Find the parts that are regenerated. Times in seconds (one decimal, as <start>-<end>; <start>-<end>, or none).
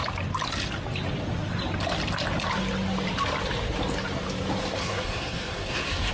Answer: 4.8-6.1